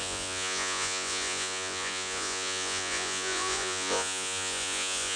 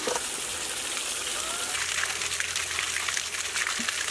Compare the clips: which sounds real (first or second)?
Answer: second